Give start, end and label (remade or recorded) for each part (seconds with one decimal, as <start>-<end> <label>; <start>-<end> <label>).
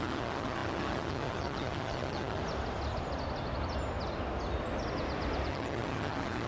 0.0-2.4 remade; 2.4-5.5 recorded; 5.5-6.5 remade